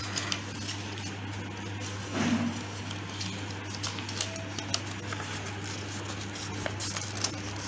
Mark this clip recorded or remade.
recorded